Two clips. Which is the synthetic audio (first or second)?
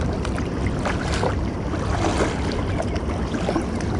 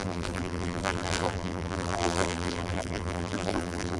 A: second